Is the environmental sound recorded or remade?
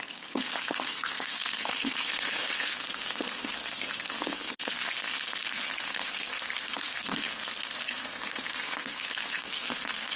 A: remade